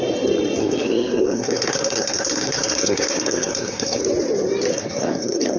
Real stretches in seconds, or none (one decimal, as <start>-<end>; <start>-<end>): 0.0-0.6; 4.0-4.7